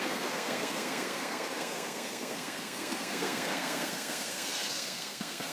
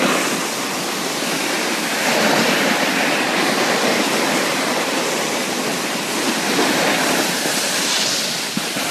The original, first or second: second